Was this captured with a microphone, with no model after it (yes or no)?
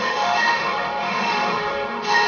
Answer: no